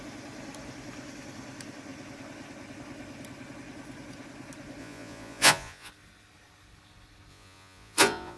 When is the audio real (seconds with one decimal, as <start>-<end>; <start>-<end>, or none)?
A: 0.0-4.8; 5.9-7.3